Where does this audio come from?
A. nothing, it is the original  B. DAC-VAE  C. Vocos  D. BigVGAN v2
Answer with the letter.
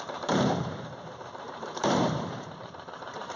D